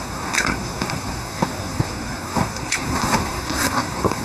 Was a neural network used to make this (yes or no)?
yes